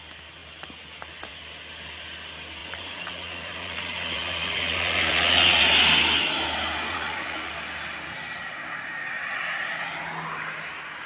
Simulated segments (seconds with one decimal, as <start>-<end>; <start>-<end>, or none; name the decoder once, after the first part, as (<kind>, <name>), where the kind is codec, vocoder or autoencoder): 2.6-5.6 (vocoder, Vocos); 6.9-7.5